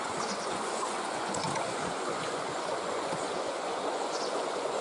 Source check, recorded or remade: remade